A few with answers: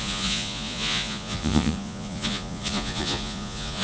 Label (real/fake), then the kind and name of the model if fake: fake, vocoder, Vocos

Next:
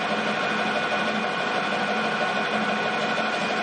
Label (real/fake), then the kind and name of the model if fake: real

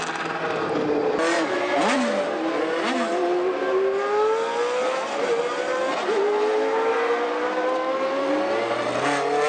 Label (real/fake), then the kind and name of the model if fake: real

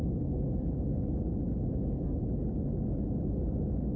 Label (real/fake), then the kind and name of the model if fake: real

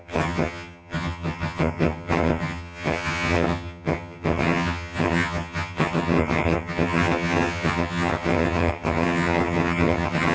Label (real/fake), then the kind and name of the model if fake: fake, vocoder, HiFi-GAN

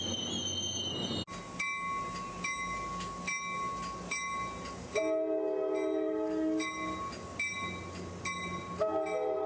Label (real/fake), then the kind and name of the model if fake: real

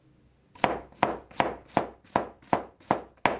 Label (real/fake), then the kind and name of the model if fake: real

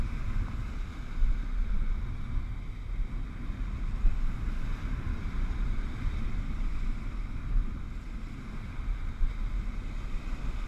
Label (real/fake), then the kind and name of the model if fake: real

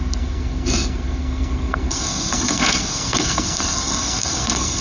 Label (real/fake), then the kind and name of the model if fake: fake, codec, SNAC